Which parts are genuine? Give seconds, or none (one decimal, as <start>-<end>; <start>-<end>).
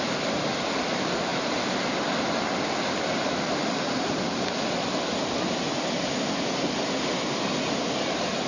0.0-1.3; 1.9-8.5